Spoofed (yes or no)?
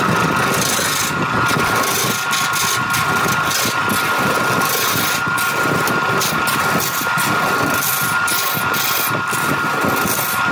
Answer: no